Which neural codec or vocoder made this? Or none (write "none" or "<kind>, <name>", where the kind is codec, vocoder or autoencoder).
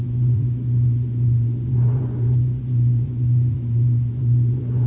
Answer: vocoder, Vocos